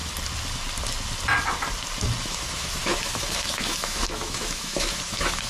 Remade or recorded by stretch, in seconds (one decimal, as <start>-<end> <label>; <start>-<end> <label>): 0.0-2.2 recorded; 2.2-5.5 remade